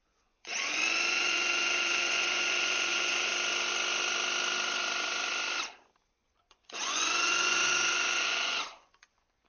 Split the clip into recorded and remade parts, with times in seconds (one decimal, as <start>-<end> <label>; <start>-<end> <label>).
0.0-3.3 remade; 3.3-6.1 recorded; 6.1-9.5 remade

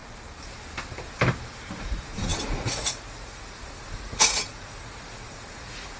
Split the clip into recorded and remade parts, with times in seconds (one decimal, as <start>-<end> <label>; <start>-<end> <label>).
0.0-1.8 recorded; 1.8-6.0 remade